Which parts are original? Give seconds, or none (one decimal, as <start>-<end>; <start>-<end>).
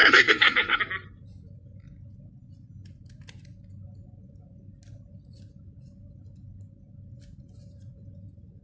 0.8-8.6